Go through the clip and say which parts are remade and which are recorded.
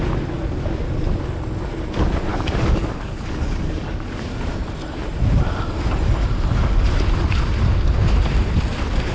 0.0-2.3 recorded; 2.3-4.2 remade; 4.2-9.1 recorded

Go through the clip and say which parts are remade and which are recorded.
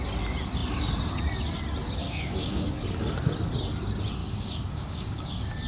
0.0-2.0 recorded; 2.0-2.7 remade; 2.7-4.2 recorded; 4.2-5.7 remade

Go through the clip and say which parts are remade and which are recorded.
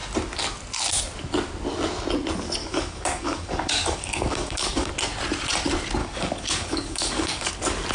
0.0-2.6 recorded; 2.6-4.9 remade; 4.9-6.0 recorded; 6.0-7.5 remade; 7.5-7.9 recorded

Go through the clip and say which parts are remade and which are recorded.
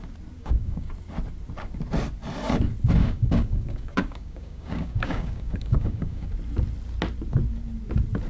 0.0-0.4 recorded; 0.4-0.9 remade; 0.9-3.0 recorded; 3.0-6.3 remade; 6.3-8.3 recorded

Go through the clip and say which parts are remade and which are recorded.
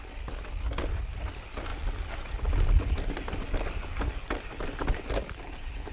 0.0-5.9 recorded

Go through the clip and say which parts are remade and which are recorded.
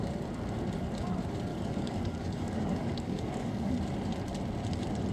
0.0-1.5 recorded; 1.5-3.7 remade; 3.7-5.1 recorded